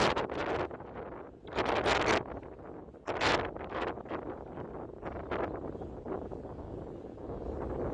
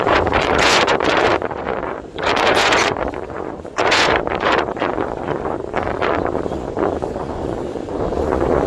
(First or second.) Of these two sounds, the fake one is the second